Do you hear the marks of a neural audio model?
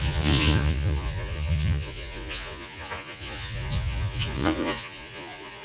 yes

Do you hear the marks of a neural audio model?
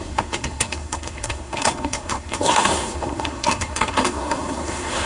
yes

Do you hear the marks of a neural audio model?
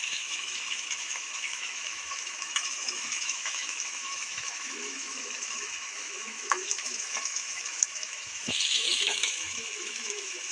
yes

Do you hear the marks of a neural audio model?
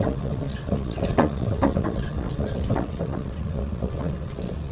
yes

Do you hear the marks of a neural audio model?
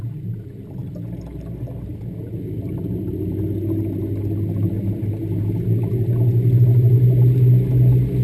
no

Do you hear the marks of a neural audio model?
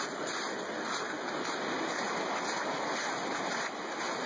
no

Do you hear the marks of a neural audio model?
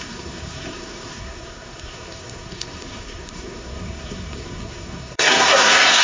yes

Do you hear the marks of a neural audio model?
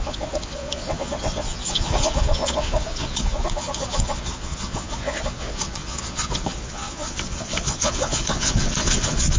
yes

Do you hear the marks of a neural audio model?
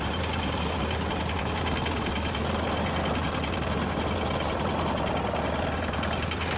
no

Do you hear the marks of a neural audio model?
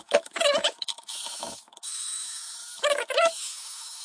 yes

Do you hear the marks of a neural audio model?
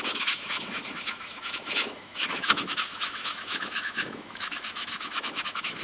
yes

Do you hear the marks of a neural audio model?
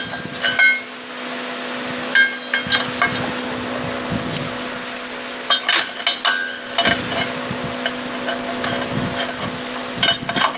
no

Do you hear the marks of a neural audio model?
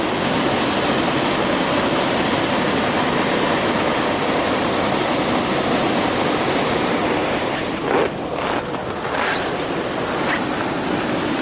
no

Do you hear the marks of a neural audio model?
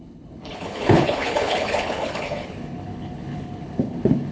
yes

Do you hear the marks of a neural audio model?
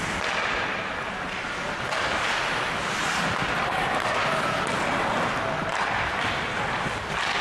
no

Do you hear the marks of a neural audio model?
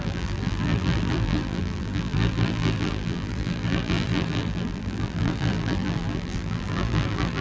yes